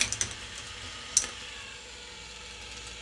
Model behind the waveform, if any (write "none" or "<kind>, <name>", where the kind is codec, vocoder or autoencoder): none